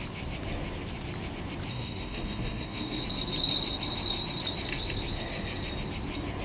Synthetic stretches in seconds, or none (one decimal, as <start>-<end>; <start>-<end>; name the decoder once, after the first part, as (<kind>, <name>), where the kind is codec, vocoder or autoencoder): 1.7-3.0 (codec, SNAC)